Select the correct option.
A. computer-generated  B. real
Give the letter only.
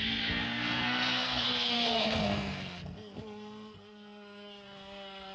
A